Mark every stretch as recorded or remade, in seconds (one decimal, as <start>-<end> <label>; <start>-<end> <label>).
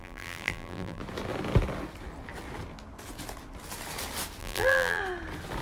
0.0-1.0 remade; 1.0-4.4 recorded; 4.4-5.0 remade; 5.0-5.6 recorded